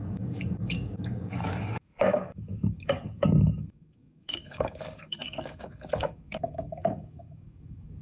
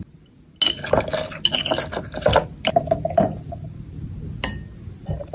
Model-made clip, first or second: first